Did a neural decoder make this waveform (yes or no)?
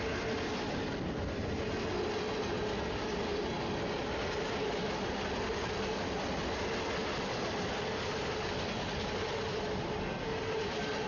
no